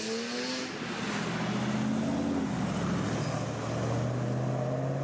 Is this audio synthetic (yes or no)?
no